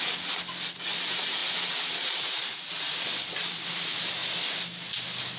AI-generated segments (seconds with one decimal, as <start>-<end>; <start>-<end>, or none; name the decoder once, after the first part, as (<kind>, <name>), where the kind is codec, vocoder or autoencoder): none